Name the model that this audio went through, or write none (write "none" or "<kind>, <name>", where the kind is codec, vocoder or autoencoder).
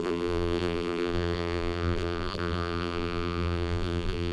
vocoder, BigVGAN v2